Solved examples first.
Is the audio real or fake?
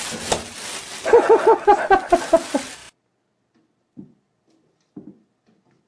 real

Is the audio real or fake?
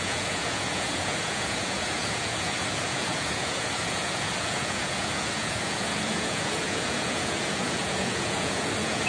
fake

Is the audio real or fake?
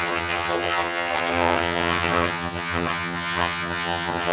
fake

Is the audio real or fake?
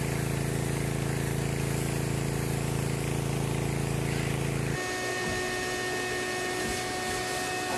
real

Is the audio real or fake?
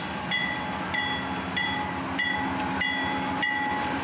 real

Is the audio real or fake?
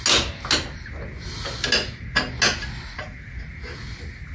real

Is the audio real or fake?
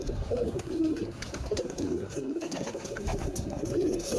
fake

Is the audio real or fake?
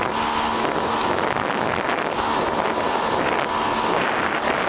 real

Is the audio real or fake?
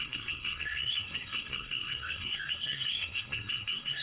fake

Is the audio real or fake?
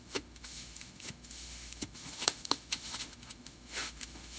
fake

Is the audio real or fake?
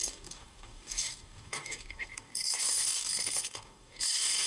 fake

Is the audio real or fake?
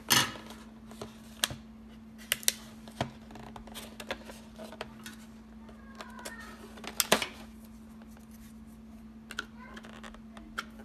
real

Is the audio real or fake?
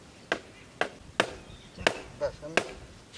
real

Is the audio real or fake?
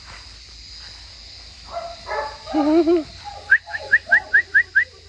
real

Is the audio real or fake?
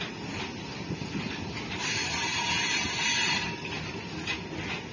real